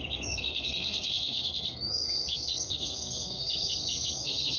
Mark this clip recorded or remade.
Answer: remade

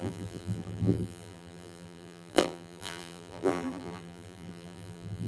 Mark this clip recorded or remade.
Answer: remade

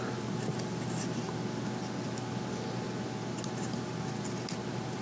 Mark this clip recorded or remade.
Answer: recorded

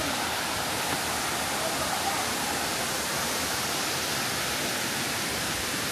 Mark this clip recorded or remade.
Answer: remade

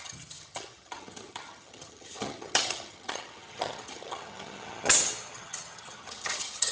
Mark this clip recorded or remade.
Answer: remade